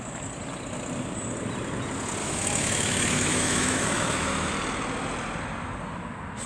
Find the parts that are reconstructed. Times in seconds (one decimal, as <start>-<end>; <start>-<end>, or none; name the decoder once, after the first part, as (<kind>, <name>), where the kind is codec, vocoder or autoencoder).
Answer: 2.2-4.5 (autoencoder, DAC-VAE)